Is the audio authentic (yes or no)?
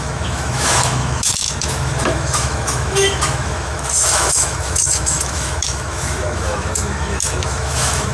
no